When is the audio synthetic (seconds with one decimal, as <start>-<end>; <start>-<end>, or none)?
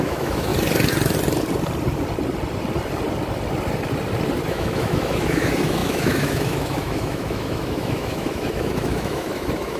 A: 0.0-0.5; 4.5-9.8